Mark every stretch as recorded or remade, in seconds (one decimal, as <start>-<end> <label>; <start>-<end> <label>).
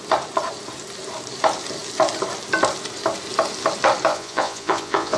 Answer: 0.0-4.1 recorded; 4.1-5.2 remade